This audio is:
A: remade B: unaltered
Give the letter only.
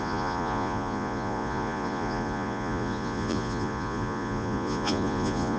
A